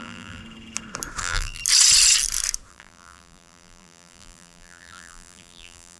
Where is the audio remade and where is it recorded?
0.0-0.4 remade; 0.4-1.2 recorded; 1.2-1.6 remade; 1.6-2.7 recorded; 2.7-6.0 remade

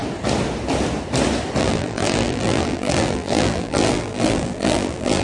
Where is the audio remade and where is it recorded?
0.0-1.6 recorded; 1.6-5.2 remade